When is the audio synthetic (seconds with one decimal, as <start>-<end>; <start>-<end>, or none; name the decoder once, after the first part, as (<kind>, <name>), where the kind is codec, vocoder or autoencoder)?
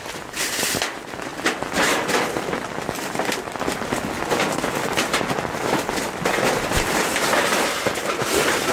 none